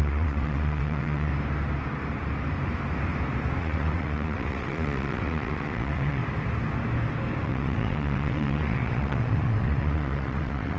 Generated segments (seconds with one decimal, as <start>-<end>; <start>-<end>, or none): 0.0-1.3; 3.6-6.2; 7.4-10.8